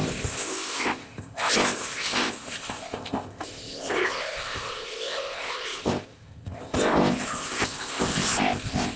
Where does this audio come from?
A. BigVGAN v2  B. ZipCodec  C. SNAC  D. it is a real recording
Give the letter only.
B